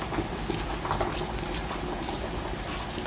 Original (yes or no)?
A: yes